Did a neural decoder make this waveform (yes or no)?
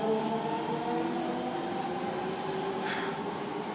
no